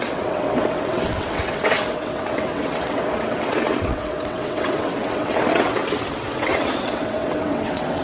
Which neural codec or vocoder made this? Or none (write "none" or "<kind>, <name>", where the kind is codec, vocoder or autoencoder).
vocoder, WaveNeXt